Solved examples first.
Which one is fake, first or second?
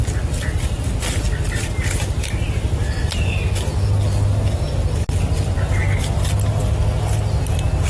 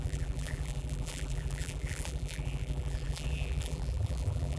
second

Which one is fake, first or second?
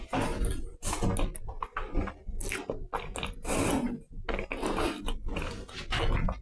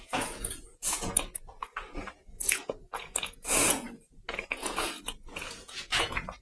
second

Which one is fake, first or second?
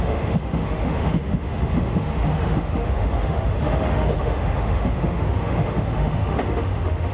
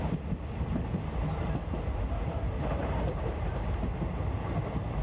first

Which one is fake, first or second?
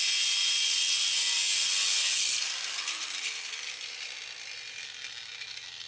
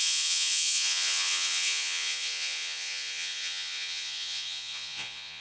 second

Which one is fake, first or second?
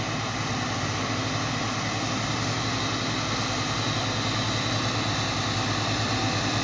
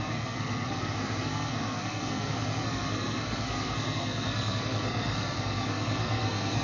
second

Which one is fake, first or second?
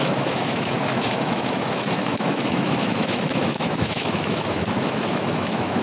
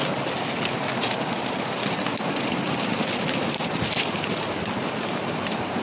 first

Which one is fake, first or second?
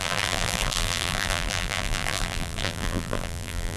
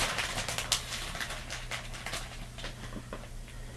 first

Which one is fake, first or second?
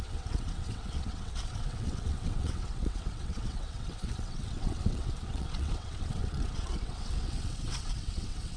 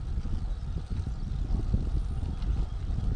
first